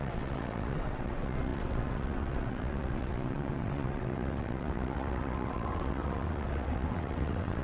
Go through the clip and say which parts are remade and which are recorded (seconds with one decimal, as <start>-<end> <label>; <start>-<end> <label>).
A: 0.0-7.6 remade